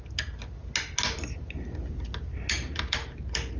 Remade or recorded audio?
recorded